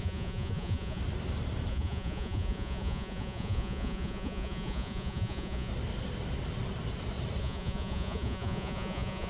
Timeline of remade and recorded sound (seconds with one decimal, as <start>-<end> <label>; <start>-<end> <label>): 0.0-1.0 remade; 1.0-1.7 recorded; 1.7-5.7 remade; 5.7-7.4 recorded; 7.4-9.3 remade